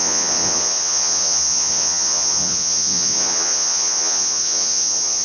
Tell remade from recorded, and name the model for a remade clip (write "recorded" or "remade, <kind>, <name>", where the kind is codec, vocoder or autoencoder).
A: remade, vocoder, Vocos